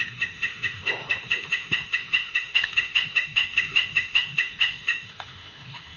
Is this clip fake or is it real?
fake